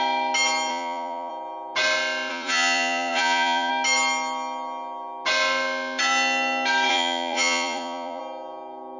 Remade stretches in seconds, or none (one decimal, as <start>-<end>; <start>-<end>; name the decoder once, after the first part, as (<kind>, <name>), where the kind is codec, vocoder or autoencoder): 0.7-1.3 (vocoder, Vocos); 2.3-3.7; 6.9-8.2